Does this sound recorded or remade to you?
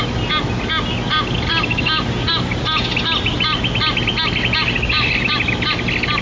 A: recorded